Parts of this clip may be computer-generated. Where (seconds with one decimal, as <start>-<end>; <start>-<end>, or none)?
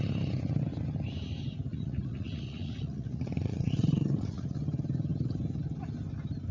1.7-4.6